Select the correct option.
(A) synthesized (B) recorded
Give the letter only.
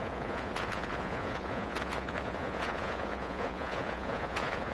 A